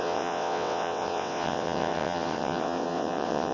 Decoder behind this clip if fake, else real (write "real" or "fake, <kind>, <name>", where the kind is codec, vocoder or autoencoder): fake, vocoder, WaveNeXt